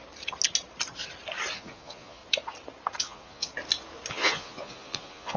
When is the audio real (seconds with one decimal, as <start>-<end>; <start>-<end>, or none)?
0.0-1.5; 2.2-3.0; 3.5-4.1

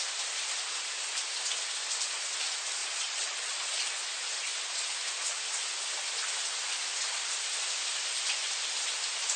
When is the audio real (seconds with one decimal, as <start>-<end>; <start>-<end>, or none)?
0.0-2.8; 3.8-9.4

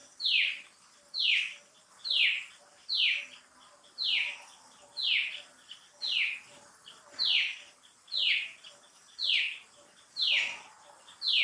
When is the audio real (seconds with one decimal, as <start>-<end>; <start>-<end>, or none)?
0.0-11.4

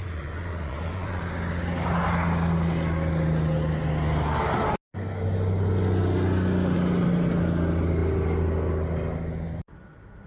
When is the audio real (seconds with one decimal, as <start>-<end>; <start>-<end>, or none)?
1.2-10.3